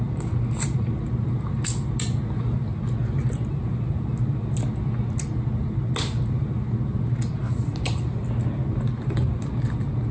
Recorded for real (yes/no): yes